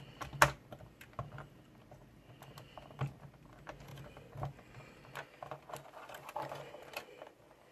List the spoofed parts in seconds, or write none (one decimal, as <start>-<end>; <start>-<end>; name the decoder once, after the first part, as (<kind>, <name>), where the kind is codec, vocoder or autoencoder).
none